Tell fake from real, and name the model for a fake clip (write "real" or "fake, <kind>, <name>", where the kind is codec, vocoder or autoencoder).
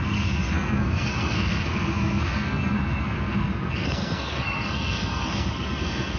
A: fake, codec, SNAC